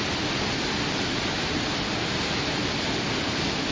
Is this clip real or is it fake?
real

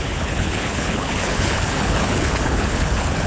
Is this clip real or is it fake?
fake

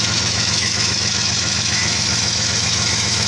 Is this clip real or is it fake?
fake